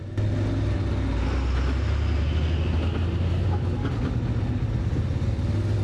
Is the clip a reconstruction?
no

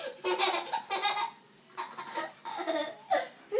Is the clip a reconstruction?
no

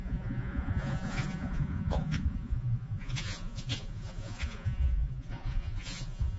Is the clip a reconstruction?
yes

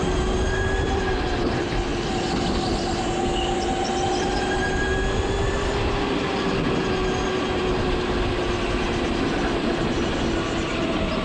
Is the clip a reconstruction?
no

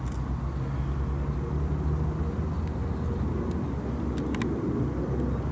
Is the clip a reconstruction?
no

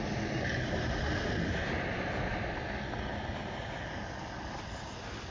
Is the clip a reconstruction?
no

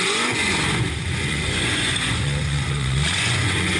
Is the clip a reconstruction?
yes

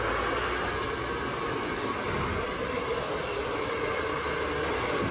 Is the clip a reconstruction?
no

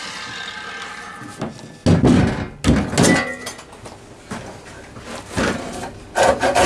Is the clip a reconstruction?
no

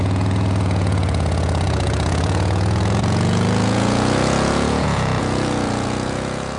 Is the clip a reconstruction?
yes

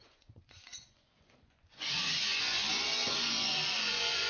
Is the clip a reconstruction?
yes